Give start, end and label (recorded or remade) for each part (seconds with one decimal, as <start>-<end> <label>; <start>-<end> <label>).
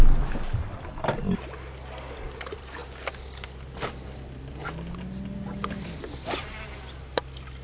0.0-2.8 remade; 2.8-5.8 recorded; 5.8-7.6 remade